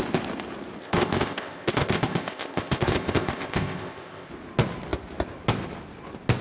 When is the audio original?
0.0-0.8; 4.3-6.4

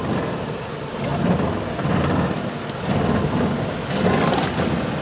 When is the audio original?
0.0-5.0

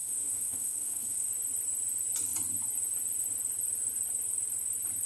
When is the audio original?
1.3-5.1

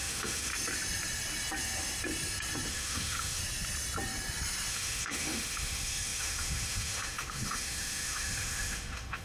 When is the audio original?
0.5-2.7; 3.4-4.7

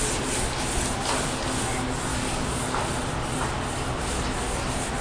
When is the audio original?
0.0-2.1; 2.8-5.0

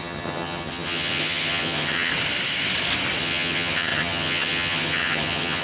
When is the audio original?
2.1-3.2

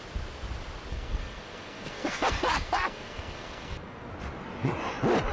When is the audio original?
0.0-0.9; 4.1-5.3